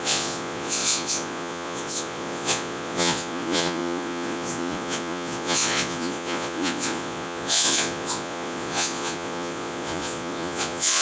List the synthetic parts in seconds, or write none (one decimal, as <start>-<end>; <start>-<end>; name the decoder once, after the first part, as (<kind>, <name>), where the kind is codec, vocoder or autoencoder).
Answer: 0.0-11.0 (vocoder, Vocos)